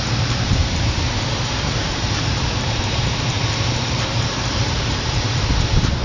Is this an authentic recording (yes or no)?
no